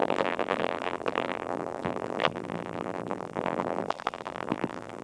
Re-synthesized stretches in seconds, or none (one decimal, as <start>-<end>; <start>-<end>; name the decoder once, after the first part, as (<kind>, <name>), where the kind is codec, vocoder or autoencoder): 0.0-5.0 (vocoder, BigVGAN v2)